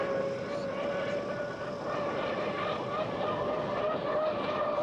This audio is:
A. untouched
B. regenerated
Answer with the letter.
A